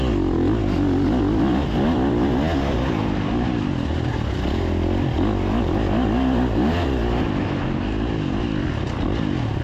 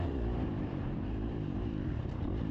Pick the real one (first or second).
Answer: first